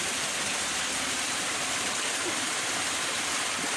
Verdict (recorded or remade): recorded